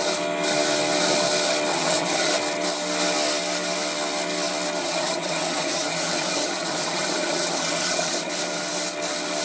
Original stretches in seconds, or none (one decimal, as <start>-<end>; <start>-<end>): 0.0-1.7; 2.3-4.8; 8.3-9.4